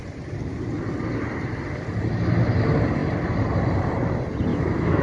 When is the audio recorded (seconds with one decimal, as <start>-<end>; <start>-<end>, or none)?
0.0-4.5